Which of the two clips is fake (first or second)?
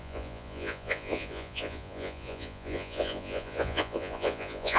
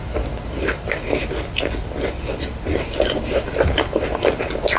first